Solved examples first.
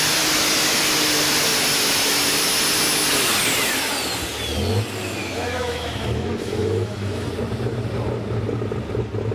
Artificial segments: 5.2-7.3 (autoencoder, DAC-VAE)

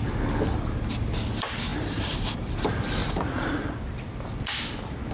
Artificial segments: 1.7-2.6 (vocoder, BigVGAN v2); 3.0-3.8

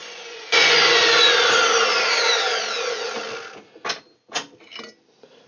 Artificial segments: 0.0-1.3 (vocoder, Vocos)

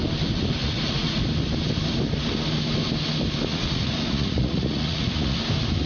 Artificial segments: 0.6-1.2 (vocoder, Vocos); 3.5-5.4